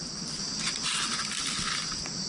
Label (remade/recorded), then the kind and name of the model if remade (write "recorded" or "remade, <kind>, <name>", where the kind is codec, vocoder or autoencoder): recorded